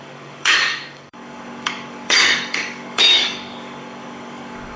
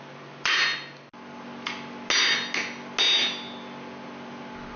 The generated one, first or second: first